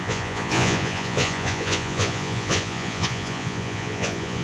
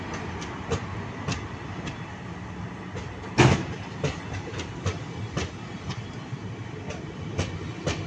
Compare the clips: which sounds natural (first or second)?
second